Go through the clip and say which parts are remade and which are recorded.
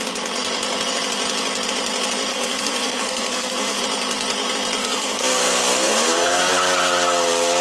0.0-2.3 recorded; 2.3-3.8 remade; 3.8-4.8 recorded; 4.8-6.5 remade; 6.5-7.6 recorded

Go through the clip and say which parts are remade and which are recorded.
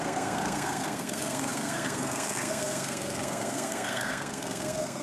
0.0-5.0 remade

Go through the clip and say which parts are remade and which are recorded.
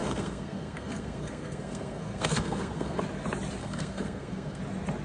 0.0-3.0 remade; 3.0-3.6 recorded; 3.6-4.6 remade; 4.6-5.0 recorded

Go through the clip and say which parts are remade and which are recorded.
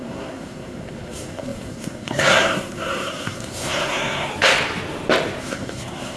0.0-4.3 remade; 4.3-5.4 recorded; 5.4-6.2 remade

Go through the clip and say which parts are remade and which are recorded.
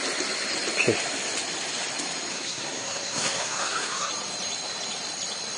0.0-2.3 recorded; 2.3-4.1 remade; 4.1-5.6 recorded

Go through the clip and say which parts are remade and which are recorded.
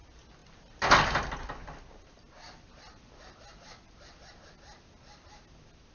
0.0-5.9 recorded